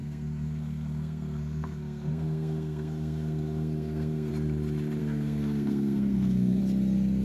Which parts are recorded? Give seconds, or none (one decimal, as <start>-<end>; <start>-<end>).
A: 4.3-5.0; 6.6-7.2